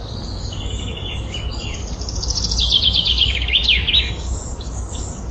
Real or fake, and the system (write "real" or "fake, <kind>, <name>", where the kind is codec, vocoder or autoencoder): fake, codec, DAC